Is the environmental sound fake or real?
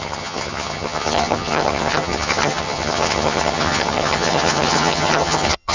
fake